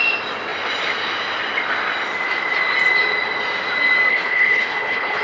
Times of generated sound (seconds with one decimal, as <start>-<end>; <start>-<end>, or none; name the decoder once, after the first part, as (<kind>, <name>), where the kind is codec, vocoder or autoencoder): 4.1-5.2 (codec, HILCodec)